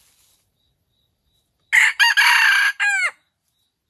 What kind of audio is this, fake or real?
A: real